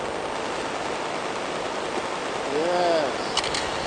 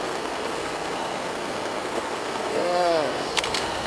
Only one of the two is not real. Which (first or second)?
second